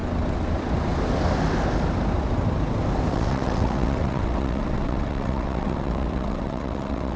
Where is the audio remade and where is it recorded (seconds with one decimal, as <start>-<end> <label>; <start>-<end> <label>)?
0.0-3.1 recorded; 3.1-7.2 remade